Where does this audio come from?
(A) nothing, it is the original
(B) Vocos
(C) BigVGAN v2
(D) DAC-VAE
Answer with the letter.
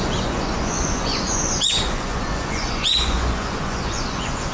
B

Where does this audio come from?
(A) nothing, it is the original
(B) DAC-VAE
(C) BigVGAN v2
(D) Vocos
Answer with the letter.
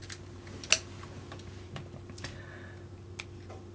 A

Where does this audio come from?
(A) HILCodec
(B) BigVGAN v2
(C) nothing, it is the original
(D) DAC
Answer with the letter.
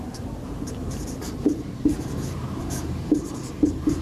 B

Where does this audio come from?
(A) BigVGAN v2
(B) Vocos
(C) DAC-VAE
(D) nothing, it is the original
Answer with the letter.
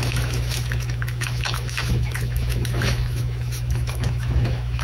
C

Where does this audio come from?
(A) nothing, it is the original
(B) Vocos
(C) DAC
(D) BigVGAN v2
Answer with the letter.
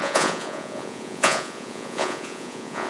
B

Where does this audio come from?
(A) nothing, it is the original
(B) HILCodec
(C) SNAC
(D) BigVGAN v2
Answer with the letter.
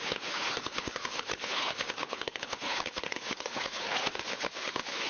B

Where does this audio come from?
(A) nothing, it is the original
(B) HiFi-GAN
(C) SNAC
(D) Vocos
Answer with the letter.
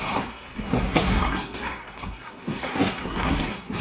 C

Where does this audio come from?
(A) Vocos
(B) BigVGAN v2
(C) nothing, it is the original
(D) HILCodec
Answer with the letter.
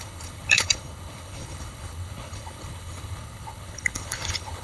D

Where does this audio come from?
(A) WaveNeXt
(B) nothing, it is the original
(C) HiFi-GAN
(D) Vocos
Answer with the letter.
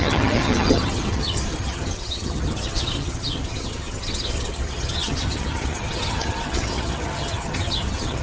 C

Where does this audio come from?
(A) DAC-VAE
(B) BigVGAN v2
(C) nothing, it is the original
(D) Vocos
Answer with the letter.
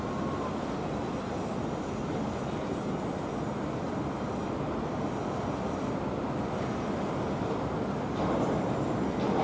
C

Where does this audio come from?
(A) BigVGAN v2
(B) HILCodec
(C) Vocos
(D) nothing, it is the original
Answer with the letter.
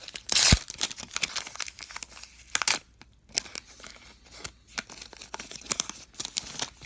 D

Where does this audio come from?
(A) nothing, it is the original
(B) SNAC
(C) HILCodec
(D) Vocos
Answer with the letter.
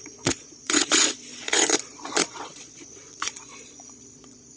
D